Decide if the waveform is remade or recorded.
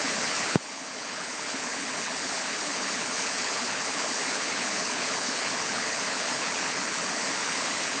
remade